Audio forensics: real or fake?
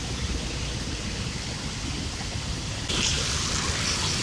real